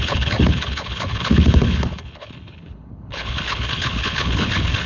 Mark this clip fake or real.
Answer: fake